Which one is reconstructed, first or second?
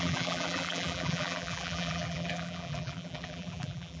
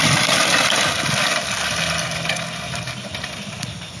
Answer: first